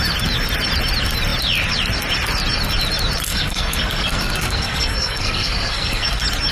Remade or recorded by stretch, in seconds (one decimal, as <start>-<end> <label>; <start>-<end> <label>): 0.0-3.3 recorded; 3.3-6.1 remade; 6.1-6.5 recorded